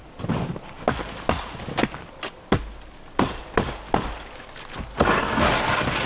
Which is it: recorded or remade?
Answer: recorded